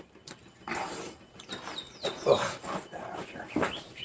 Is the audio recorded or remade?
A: recorded